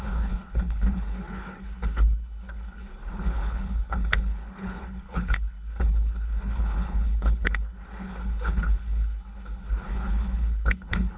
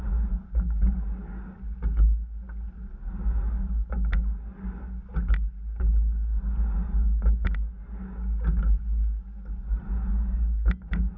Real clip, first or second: second